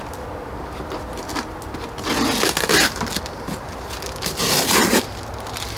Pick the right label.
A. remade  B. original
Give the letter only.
B